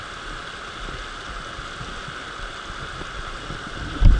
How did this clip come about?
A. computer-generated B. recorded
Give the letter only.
B